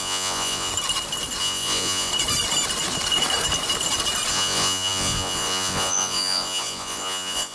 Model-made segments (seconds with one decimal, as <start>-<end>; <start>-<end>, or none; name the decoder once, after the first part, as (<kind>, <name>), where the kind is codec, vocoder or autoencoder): 0.0-0.7 (vocoder, Vocos); 1.4-2.1; 4.3-7.5